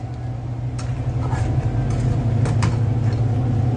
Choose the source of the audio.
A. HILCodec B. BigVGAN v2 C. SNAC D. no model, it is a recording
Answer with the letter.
D